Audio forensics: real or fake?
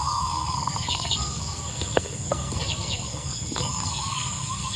fake